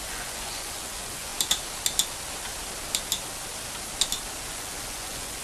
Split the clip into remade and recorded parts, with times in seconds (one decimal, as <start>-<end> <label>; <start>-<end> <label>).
0.0-1.3 remade; 1.3-4.5 recorded; 4.5-5.4 remade